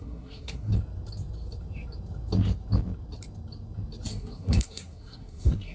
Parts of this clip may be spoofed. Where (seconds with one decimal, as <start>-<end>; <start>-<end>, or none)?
0.0-0.7; 4.1-5.7